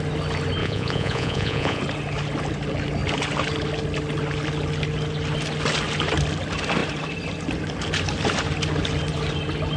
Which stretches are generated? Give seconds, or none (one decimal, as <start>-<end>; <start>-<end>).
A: 0.6-1.8

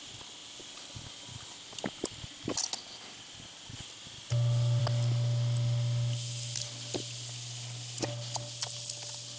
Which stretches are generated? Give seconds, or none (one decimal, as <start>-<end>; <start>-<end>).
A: none

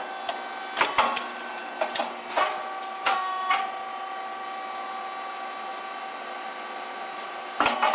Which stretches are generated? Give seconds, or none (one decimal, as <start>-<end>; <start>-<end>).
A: none